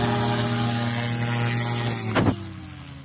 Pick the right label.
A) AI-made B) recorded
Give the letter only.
B